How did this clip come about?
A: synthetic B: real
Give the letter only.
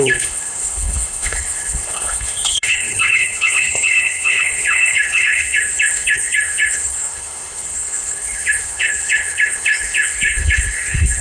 A